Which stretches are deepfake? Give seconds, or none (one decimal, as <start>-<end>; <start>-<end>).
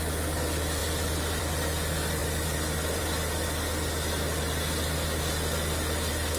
none